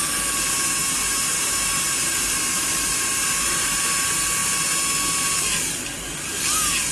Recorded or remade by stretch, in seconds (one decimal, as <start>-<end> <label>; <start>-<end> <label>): 0.0-0.8 recorded; 0.8-3.8 remade; 3.8-6.9 recorded